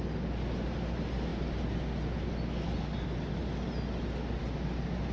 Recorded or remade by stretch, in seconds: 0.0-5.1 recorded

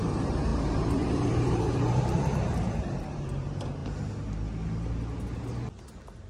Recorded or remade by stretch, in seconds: 0.0-3.8 remade; 3.8-6.3 recorded

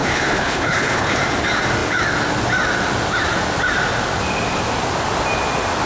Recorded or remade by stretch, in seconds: 0.0-1.2 remade; 1.2-5.9 recorded

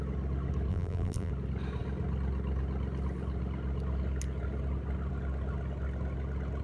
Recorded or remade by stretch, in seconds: 0.0-0.7 recorded; 0.7-1.3 remade; 1.3-6.6 recorded